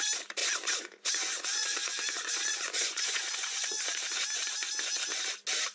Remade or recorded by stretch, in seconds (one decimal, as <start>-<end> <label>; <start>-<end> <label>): 0.0-0.4 recorded; 0.4-3.8 remade; 3.8-5.7 recorded

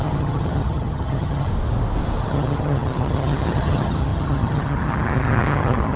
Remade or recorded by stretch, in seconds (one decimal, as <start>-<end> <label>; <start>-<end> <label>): 0.0-1.5 remade; 1.5-2.2 recorded; 2.2-6.0 remade